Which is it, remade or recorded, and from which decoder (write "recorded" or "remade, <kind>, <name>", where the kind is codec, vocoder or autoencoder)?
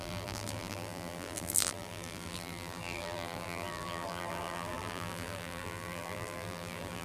remade, vocoder, BigVGAN v2